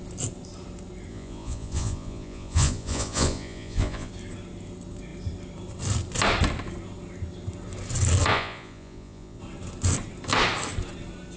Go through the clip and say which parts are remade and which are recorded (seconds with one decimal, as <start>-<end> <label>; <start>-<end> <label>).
0.0-1.1 recorded; 1.1-4.1 remade; 4.1-8.3 recorded; 8.3-9.4 remade; 9.4-11.4 recorded